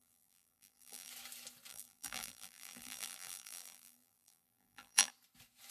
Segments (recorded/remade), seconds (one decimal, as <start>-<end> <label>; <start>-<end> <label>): 0.0-1.1 remade; 1.1-1.7 recorded; 1.7-5.1 remade; 5.1-5.7 recorded

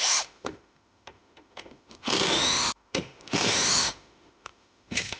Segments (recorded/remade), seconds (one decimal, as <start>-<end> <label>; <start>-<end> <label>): 0.0-5.2 remade

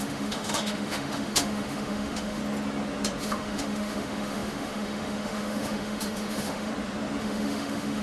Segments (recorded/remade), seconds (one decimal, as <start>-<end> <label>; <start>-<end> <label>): 0.0-2.4 remade; 2.4-3.2 recorded; 3.2-6.7 remade; 6.7-7.2 recorded; 7.2-8.0 remade

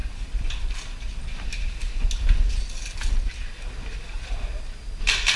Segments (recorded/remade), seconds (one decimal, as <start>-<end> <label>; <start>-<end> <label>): 0.0-5.4 recorded

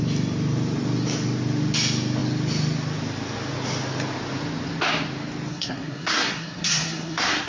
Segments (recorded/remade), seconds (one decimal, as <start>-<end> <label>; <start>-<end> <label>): 0.0-5.5 recorded; 5.5-7.5 remade

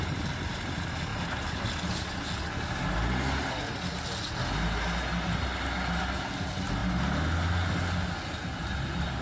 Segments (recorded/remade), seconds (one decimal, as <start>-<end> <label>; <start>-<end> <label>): 0.0-9.2 recorded